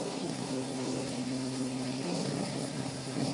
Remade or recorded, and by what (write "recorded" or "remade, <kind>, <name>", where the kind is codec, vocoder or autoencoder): remade, codec, SNAC